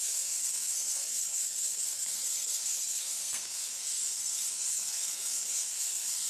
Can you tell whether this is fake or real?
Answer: fake